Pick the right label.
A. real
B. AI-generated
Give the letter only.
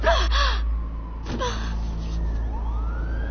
A